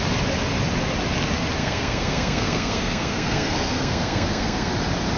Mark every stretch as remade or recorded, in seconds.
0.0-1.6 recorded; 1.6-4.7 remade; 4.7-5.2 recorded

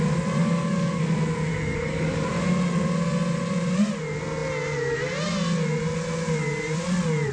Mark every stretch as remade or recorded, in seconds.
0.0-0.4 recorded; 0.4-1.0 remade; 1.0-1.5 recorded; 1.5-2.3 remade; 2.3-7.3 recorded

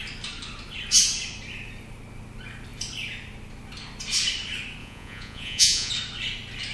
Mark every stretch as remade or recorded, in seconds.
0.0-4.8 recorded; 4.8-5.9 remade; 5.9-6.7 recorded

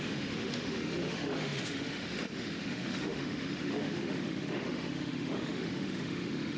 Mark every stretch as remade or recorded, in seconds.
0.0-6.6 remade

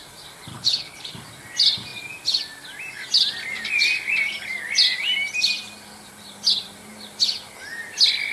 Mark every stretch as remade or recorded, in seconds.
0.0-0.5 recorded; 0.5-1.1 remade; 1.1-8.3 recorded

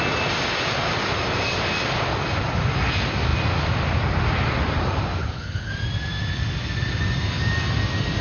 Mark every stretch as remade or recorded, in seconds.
0.0-5.2 recorded; 5.2-5.7 remade; 5.7-8.2 recorded

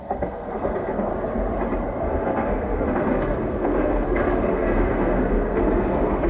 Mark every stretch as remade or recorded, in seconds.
0.0-1.1 remade; 1.1-2.0 recorded; 2.0-6.3 remade